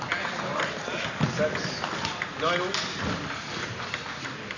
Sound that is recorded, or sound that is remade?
recorded